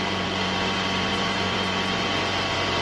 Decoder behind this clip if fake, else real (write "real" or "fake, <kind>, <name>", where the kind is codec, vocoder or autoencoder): fake, vocoder, Vocos